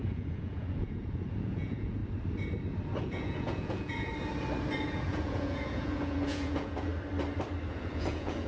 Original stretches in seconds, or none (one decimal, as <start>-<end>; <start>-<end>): 2.0-3.0; 4.1-4.8; 6.9-7.7